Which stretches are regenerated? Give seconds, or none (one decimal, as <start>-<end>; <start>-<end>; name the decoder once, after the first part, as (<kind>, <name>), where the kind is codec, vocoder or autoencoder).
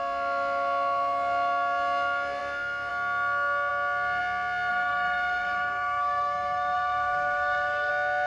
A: 4.7-7.9 (codec, SNAC)